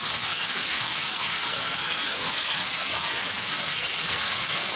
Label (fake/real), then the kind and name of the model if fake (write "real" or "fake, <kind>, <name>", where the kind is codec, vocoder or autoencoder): fake, codec, SNAC